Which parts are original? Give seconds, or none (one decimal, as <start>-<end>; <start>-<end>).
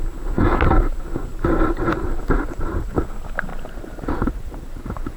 0.0-1.3; 3.0-3.5